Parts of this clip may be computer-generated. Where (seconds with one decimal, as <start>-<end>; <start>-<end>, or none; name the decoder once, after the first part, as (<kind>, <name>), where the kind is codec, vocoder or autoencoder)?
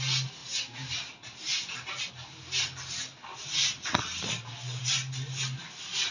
none